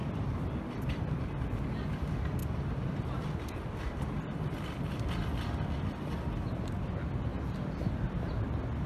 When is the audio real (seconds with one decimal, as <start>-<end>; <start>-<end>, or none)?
0.0-8.9